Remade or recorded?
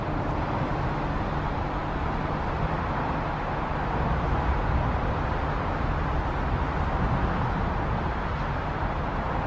recorded